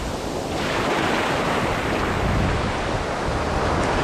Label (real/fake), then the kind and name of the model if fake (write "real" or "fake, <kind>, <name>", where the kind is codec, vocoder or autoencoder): real